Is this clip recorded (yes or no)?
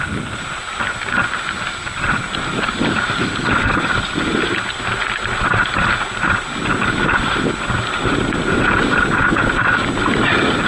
yes